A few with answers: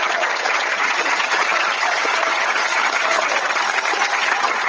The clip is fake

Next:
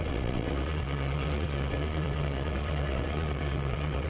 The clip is fake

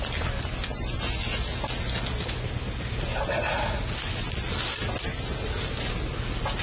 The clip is real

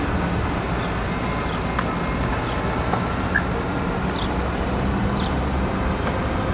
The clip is real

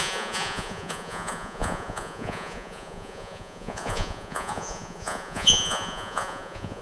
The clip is fake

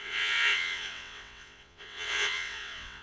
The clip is fake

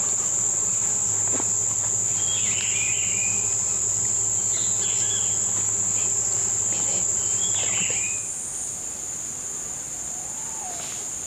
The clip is real